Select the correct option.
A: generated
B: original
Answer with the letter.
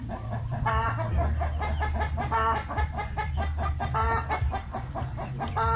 B